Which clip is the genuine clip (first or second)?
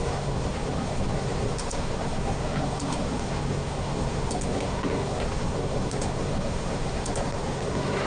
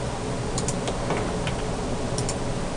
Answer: second